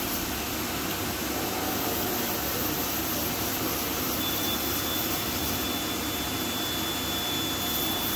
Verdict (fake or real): real